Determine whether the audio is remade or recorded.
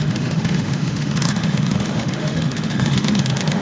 remade